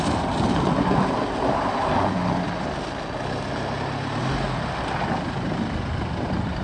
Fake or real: real